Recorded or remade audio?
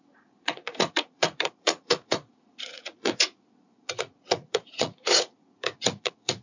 remade